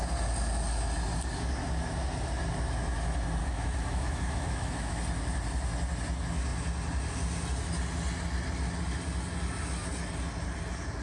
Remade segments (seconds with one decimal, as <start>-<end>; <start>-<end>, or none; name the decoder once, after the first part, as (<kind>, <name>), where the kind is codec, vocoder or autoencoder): 3.4-5.0 (autoencoder, DAC-VAE)